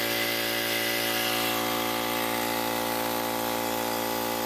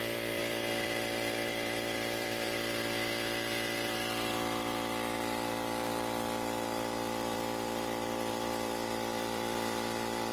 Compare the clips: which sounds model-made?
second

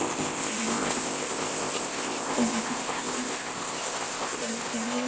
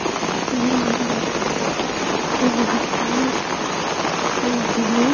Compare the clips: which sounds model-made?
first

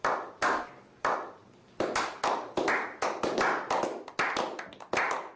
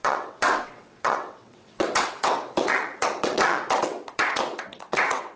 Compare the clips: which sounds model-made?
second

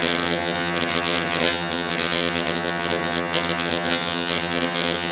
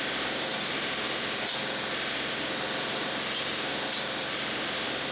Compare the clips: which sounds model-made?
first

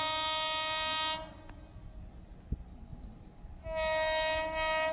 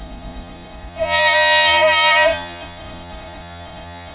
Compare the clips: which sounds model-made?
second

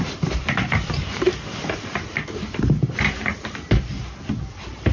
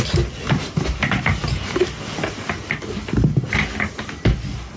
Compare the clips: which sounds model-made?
first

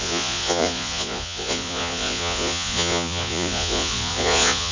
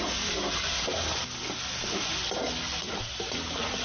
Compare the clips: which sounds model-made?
first